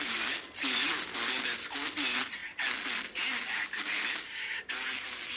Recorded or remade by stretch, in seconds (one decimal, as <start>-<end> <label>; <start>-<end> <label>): 0.0-5.4 recorded